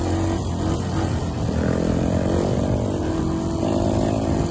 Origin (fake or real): real